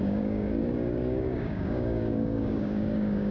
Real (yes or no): no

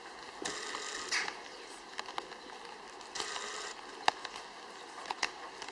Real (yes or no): yes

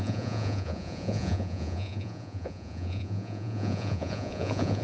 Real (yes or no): no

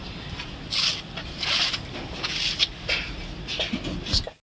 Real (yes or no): yes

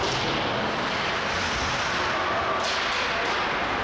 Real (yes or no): yes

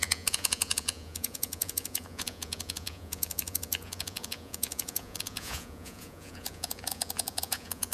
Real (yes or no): no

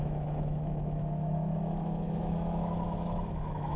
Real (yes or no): no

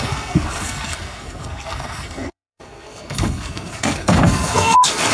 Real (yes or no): no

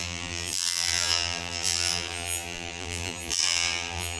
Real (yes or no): no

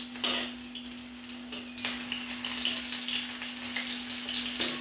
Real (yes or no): yes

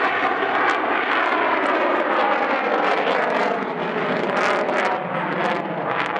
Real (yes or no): yes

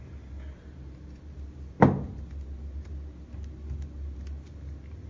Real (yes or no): yes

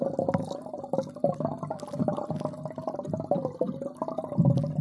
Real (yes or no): yes